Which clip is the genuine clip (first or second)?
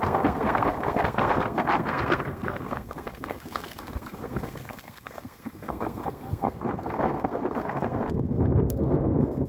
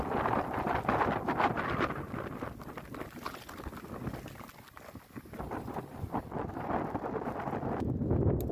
second